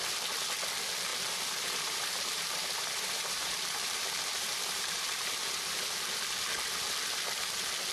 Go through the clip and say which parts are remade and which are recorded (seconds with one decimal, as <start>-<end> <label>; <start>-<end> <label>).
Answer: 0.0-1.1 recorded; 1.1-5.4 remade; 5.4-7.9 recorded